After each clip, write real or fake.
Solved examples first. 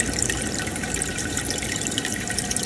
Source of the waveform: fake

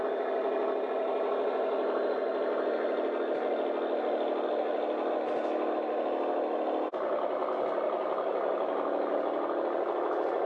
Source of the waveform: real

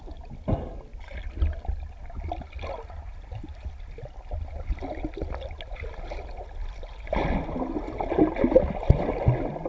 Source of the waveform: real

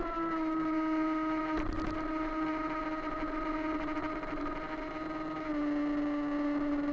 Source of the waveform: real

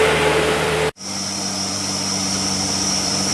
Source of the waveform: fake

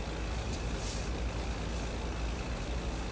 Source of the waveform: real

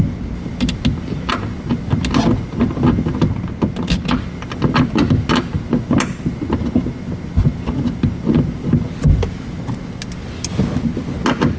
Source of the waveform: real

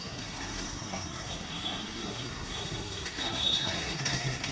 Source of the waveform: fake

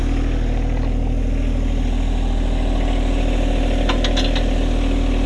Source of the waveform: real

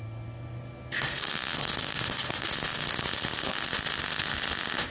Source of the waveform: real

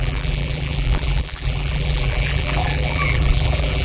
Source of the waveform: fake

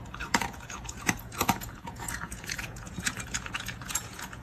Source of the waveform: fake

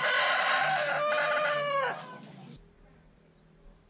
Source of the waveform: real